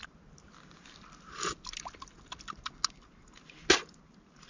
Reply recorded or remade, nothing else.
recorded